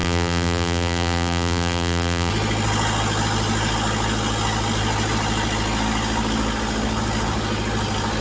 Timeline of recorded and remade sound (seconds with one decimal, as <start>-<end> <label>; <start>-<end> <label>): 0.0-2.3 remade; 2.3-8.2 recorded